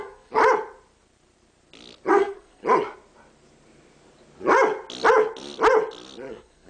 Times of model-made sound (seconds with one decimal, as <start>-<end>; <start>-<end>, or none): 0.0-0.4; 2.1-2.6; 6.3-6.7